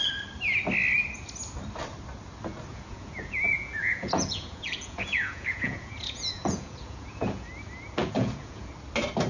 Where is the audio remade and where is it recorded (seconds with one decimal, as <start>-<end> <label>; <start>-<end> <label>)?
0.0-2.7 recorded; 2.7-7.5 remade; 7.5-8.0 recorded; 8.0-8.7 remade; 8.7-9.3 recorded